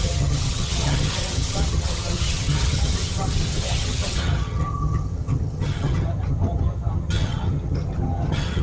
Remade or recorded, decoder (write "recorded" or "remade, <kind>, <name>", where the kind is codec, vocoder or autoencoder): remade, vocoder, HiFi-GAN